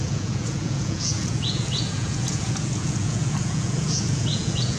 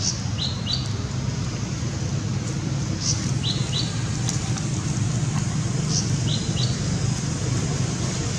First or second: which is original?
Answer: second